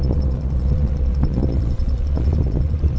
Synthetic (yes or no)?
yes